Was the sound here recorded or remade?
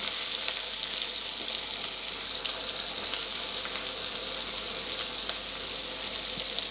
recorded